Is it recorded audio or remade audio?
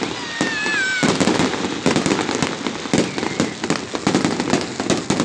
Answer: recorded